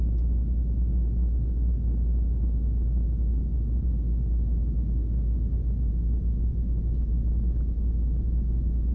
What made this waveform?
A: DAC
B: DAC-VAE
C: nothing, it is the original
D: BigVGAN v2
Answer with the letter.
C